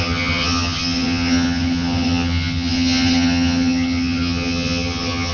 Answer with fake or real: fake